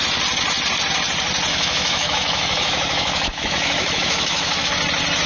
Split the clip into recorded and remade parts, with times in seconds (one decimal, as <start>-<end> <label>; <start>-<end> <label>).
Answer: 0.0-1.5 recorded; 1.5-4.7 remade; 4.7-5.3 recorded